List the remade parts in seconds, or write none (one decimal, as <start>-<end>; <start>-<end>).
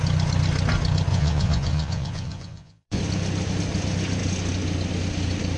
1.1-3.0